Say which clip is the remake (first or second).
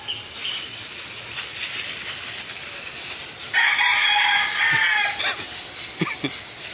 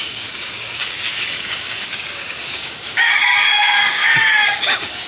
second